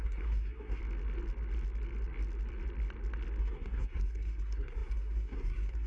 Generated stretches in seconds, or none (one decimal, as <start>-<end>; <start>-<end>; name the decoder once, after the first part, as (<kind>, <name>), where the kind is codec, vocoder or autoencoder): 0.0-0.8 (codec, SNAC); 3.4-5.9